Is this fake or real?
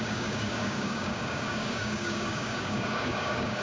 fake